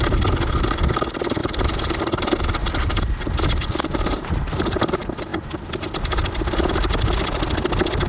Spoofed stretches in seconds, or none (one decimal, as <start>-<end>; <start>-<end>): 1.4-2.0; 2.6-4.3